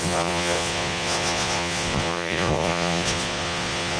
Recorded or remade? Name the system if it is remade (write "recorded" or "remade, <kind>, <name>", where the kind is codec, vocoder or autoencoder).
remade, vocoder, Vocos